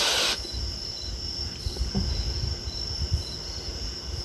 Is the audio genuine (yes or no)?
yes